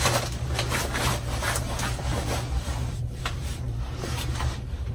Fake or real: fake